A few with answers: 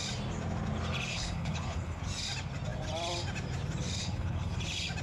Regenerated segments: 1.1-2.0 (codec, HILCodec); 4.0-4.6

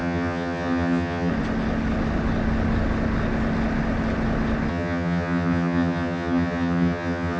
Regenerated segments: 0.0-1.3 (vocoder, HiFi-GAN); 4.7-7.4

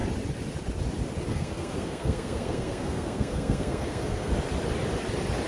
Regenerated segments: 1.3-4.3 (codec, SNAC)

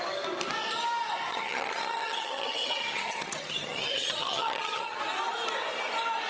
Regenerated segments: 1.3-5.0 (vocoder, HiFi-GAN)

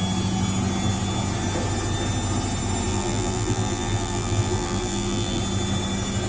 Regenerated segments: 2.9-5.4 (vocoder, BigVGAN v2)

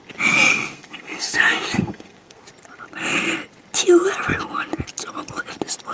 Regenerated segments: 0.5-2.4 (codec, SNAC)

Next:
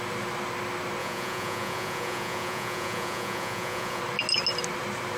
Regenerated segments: 1.0-4.0 (vocoder, Vocos)